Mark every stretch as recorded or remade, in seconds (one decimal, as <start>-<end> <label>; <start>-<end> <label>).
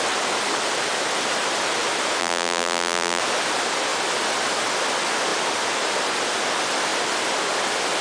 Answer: 0.0-2.2 recorded; 2.2-3.2 remade; 3.2-8.0 recorded